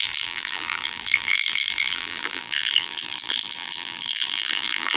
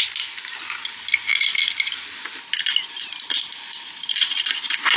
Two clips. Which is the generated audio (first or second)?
first